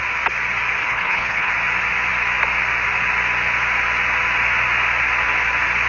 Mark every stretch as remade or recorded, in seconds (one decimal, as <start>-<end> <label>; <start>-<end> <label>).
0.0-0.8 recorded; 0.8-1.5 remade; 1.5-5.9 recorded